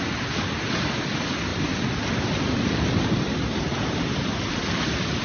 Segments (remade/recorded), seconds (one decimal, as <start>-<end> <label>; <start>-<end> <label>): 0.0-5.2 recorded